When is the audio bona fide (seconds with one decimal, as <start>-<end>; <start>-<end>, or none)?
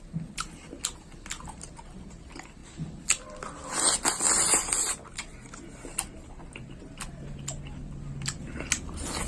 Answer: 0.0-9.3